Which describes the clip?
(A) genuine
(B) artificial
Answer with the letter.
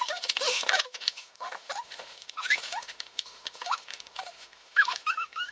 B